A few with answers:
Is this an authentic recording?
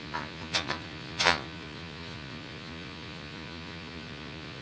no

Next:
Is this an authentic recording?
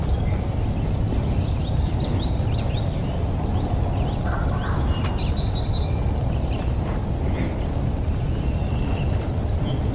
yes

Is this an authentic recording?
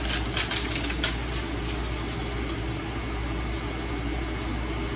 yes